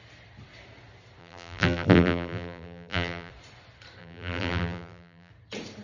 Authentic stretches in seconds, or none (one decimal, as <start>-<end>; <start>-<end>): 0.0-1.2; 3.3-4.0; 5.3-5.8